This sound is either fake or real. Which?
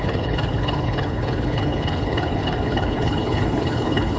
fake